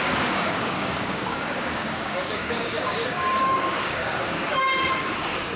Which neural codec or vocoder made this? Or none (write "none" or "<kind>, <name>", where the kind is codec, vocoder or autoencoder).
codec, DAC